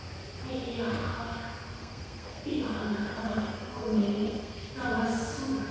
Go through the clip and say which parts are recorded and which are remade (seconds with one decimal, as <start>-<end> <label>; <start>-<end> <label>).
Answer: 0.0-1.8 recorded; 1.8-2.4 remade; 2.4-3.1 recorded; 3.1-4.7 remade; 4.7-5.7 recorded